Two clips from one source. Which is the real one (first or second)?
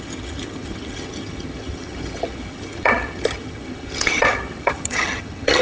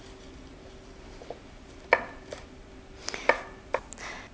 second